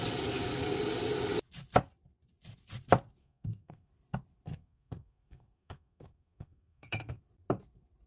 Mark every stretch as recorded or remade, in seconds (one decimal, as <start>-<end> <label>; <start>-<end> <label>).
0.0-3.2 recorded; 3.2-3.9 remade; 3.9-4.5 recorded; 4.5-7.2 remade; 7.2-8.1 recorded